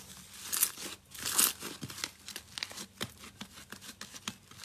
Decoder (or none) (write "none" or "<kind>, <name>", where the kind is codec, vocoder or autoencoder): none